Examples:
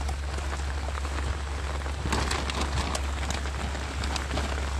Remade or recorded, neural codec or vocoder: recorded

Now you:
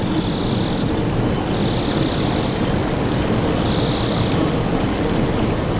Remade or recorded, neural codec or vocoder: recorded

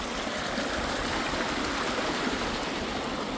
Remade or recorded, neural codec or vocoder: recorded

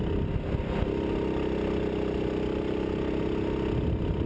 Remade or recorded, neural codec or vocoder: recorded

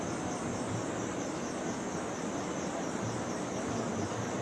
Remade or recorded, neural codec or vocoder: recorded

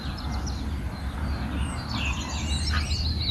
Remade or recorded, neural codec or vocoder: recorded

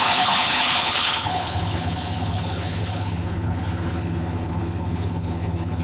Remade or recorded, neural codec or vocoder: remade, codec, HILCodec